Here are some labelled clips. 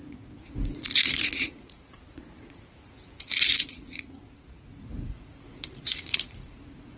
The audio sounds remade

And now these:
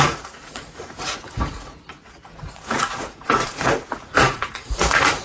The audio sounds remade